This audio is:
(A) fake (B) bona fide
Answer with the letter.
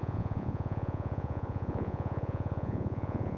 A